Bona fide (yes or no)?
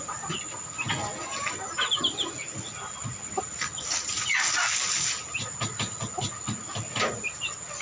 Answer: yes